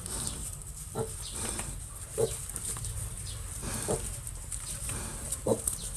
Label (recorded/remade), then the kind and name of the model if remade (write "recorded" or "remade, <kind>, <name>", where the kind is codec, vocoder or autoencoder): recorded